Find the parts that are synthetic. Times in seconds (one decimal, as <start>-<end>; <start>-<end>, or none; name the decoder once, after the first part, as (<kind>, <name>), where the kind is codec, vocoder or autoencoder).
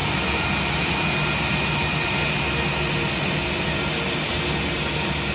none